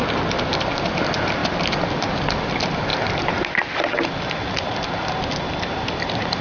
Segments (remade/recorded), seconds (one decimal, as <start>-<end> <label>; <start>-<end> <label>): 0.0-6.4 recorded